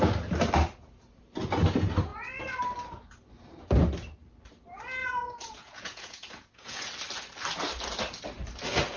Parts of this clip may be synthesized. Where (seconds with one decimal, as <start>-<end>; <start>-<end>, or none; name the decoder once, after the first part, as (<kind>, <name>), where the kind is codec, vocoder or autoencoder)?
5.0-6.9 (vocoder, Vocos)